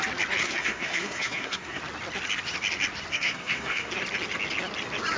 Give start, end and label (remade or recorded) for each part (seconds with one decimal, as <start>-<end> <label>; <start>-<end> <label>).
0.0-0.4 recorded; 0.4-1.8 remade; 1.8-3.1 recorded; 3.1-3.9 remade; 3.9-5.2 recorded